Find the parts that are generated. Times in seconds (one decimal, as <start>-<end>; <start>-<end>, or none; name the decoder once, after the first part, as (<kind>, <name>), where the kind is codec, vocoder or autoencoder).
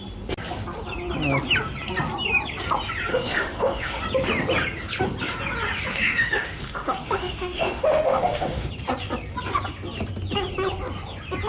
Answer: 3.1-4.0 (autoencoder, DAC-VAE); 5.9-8.7